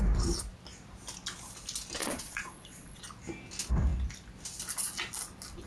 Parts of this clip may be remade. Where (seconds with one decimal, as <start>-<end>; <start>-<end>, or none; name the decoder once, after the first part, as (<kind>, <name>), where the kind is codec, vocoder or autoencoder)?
2.0-3.0 (vocoder, Vocos)